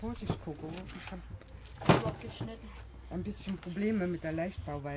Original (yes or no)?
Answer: yes